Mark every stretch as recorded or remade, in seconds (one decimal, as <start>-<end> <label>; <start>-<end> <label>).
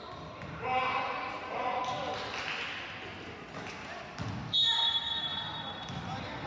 0.0-0.9 recorded; 0.9-1.8 remade; 1.8-6.5 recorded